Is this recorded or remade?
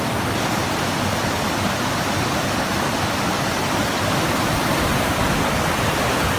remade